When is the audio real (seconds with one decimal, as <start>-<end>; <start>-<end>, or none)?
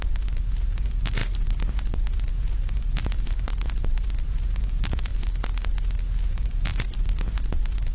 5.1-6.3